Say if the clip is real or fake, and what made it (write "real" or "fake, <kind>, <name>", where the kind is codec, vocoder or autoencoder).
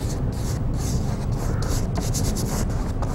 real